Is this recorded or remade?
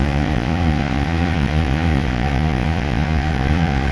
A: remade